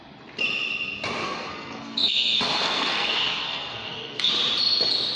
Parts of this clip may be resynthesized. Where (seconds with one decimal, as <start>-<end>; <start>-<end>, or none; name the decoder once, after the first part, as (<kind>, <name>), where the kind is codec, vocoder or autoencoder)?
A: 1.2-4.3 (codec, SNAC)